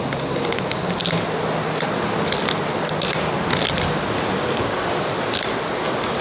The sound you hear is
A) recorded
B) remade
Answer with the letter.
A